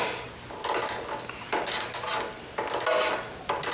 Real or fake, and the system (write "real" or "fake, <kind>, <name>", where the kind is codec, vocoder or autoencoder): real